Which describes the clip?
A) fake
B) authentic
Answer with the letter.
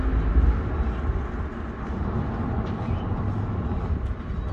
B